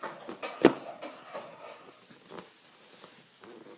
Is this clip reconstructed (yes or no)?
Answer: no